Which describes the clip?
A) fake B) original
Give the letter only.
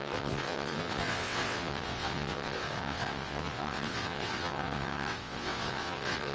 A